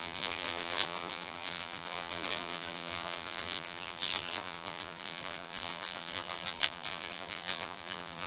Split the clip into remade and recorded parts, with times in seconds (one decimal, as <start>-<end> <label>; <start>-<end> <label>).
0.0-8.3 remade